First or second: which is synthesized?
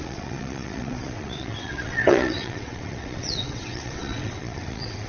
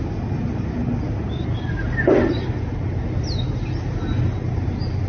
first